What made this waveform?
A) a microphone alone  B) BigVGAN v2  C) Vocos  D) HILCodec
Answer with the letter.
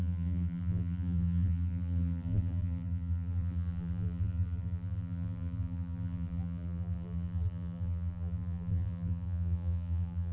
B